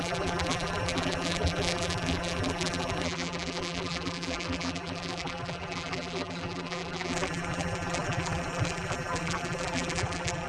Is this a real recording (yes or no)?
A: no